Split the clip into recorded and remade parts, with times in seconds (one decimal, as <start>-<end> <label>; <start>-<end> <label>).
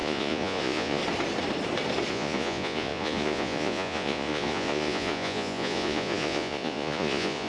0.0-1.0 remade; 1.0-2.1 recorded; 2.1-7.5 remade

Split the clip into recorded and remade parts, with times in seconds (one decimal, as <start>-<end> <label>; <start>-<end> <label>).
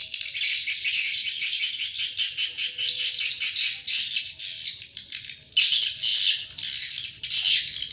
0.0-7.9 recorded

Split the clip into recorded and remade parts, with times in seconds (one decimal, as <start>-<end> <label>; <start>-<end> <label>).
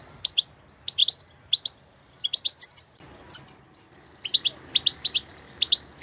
0.0-6.0 recorded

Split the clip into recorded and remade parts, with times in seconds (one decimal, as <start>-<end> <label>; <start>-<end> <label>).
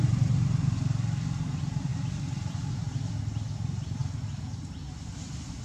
0.0-5.6 recorded